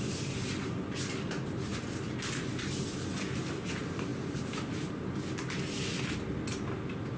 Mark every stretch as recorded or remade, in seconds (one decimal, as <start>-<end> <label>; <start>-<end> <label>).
0.0-1.7 remade; 1.7-3.0 recorded; 3.0-4.1 remade; 4.1-7.2 recorded